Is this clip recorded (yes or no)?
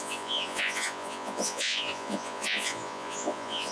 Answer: no